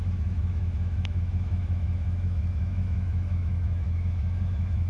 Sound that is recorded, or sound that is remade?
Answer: remade